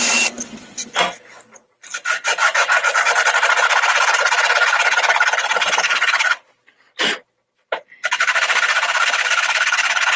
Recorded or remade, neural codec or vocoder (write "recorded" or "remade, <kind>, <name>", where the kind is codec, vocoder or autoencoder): recorded